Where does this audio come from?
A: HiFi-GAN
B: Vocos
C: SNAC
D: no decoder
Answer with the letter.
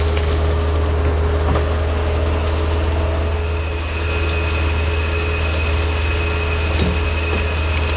D